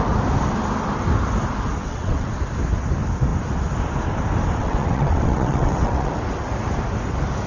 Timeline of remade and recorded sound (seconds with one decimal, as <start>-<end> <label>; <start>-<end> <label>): 0.0-1.8 recorded; 1.8-2.3 remade; 2.3-4.6 recorded; 4.6-6.1 remade; 6.1-7.5 recorded